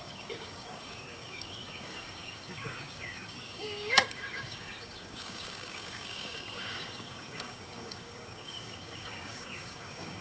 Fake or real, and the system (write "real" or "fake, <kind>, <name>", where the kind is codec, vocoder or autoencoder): fake, codec, DAC